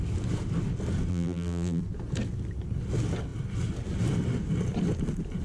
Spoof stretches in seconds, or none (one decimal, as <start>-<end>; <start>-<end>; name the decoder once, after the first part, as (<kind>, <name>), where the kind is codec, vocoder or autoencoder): 1.1-1.8 (vocoder, BigVGAN v2)